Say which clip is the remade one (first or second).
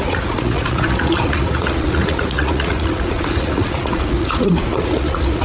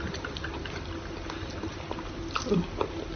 first